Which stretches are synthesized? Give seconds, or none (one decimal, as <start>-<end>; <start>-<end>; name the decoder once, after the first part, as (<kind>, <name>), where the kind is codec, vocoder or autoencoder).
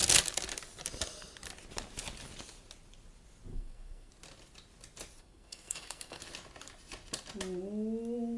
3.5-4.1 (codec, SNAC); 5.2-6.2